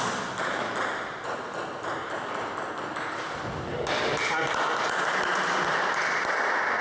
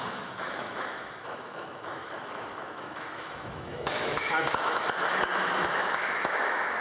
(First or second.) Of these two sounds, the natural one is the first